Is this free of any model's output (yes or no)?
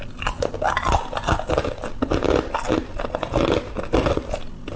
yes